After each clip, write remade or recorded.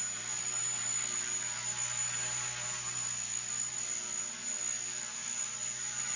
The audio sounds recorded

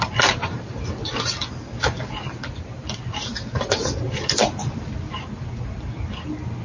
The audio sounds remade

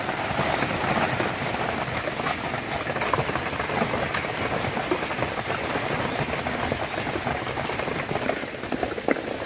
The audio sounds recorded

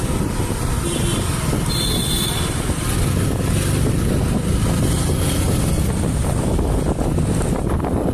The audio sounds recorded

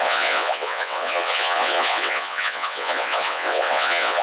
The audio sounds remade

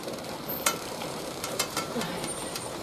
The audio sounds remade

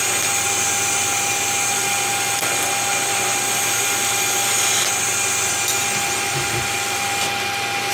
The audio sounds recorded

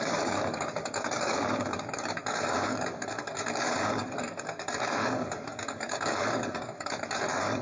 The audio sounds remade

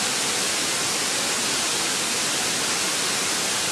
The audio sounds recorded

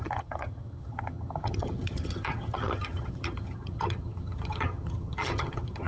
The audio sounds remade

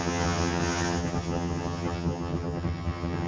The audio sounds remade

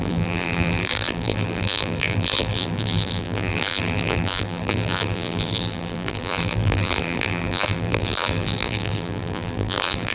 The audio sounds remade